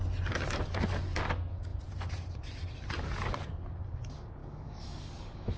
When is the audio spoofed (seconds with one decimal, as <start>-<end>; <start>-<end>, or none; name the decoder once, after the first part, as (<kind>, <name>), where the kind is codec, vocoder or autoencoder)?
4.4-5.6 (codec, DAC)